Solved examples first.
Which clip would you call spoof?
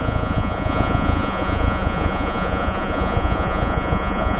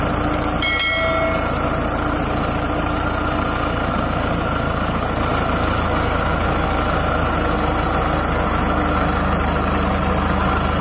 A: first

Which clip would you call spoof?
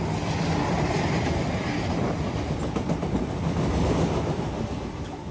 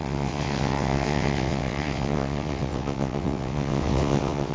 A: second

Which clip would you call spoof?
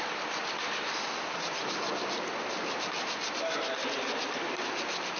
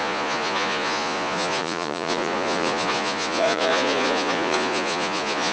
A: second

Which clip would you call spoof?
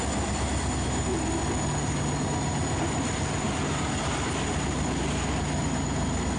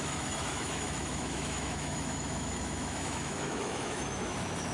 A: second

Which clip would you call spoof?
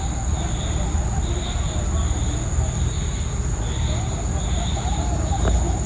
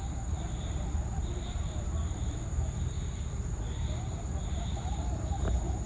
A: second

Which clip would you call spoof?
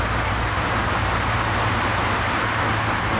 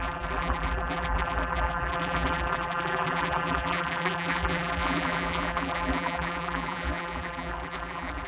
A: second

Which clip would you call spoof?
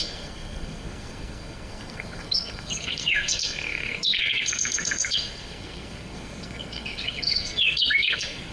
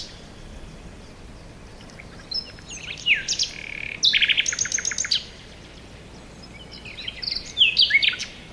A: first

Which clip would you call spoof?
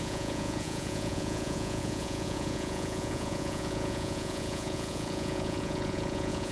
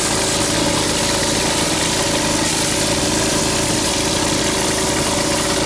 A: first